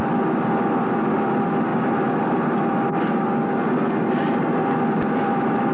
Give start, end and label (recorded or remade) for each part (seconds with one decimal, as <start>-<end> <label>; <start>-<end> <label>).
0.0-5.7 recorded